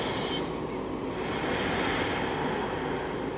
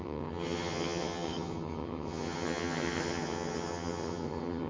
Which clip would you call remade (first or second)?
second